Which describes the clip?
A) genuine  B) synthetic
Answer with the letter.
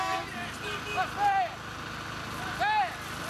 A